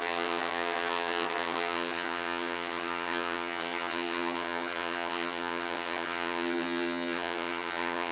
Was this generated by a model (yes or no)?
yes